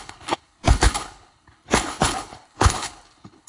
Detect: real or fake fake